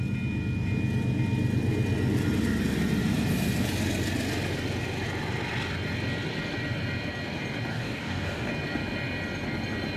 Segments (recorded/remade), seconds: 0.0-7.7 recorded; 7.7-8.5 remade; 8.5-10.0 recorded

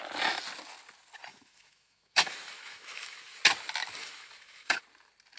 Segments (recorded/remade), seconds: 0.0-1.3 recorded; 1.3-3.4 remade; 3.4-4.0 recorded; 4.0-4.8 remade; 4.8-5.4 recorded

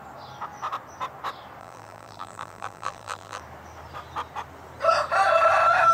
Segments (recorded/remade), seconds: 0.0-1.6 recorded; 1.6-3.4 remade; 3.4-5.9 recorded